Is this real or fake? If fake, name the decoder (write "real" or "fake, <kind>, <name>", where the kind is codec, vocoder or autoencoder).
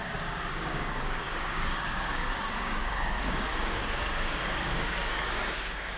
fake, codec, DAC